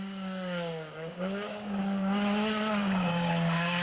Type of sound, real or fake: fake